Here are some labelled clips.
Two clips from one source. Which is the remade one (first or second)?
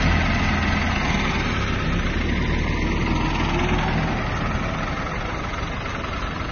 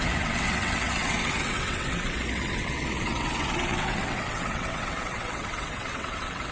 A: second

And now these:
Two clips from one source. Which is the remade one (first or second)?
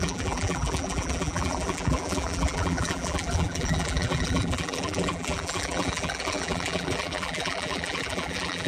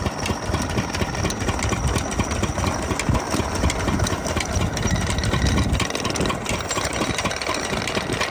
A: first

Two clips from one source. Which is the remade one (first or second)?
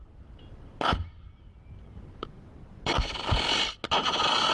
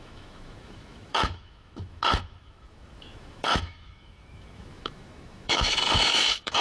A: second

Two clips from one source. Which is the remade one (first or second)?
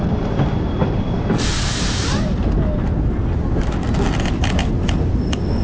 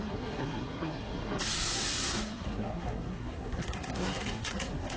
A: second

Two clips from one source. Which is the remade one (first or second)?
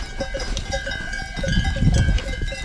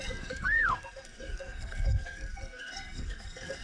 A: second